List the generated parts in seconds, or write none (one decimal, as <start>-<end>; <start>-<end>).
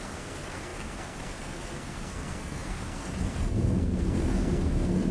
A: 0.0-5.1